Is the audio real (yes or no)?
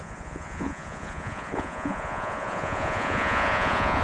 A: no